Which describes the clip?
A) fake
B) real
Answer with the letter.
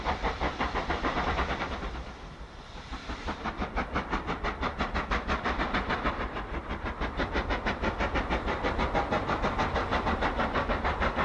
A